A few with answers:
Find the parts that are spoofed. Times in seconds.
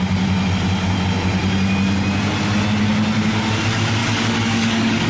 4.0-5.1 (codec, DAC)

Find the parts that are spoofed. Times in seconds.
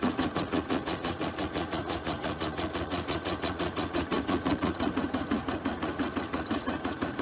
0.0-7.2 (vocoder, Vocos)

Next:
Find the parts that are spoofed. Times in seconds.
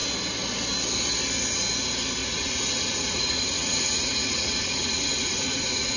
2.2-6.0 (vocoder, Vocos)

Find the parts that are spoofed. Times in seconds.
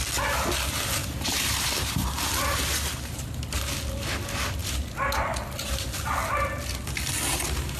1.0-3.6 (vocoder, BigVGAN v2)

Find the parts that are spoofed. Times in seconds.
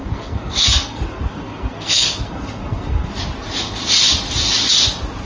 0.0-3.1 (codec, SNAC)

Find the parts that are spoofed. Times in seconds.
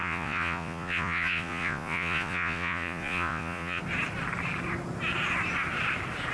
0.0-3.8 (vocoder, Vocos)